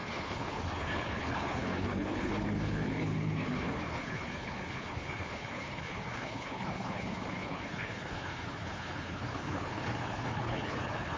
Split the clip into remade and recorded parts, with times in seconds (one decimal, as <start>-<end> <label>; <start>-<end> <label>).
0.0-11.2 remade